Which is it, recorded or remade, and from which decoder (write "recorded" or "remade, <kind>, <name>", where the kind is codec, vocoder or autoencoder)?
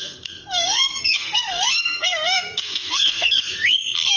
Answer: remade, codec, SNAC